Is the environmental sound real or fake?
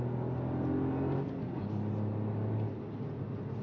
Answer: real